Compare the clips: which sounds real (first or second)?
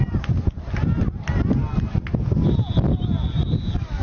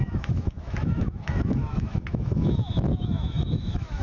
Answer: first